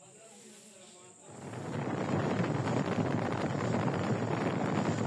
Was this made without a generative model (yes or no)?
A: yes